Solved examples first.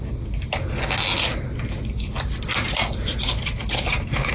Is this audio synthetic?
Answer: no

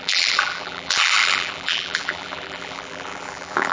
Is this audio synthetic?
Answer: yes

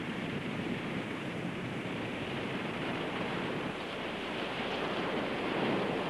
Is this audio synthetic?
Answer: yes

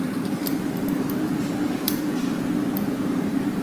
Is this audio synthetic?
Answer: yes